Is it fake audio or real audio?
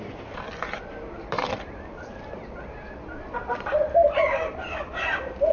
fake